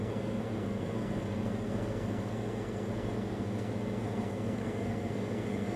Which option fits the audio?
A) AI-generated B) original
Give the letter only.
A